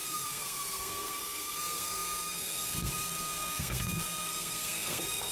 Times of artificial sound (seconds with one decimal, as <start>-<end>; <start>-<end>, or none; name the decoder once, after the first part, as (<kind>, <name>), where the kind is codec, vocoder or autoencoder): 0.0-5.3 (codec, SNAC)